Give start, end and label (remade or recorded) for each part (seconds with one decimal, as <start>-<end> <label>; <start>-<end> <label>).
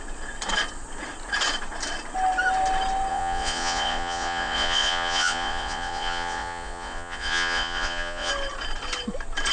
0.0-3.1 recorded; 3.1-8.3 remade; 8.3-9.5 recorded